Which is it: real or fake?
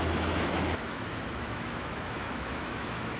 fake